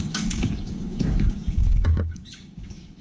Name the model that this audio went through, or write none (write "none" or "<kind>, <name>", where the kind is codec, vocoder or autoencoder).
codec, DAC